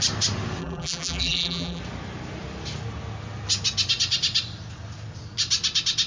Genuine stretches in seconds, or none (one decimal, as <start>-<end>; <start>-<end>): 0.0-0.6; 1.8-6.1